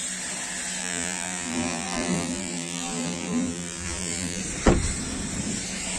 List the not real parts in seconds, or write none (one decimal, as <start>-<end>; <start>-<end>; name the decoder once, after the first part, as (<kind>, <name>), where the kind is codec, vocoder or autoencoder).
0.8-4.4 (vocoder, BigVGAN v2)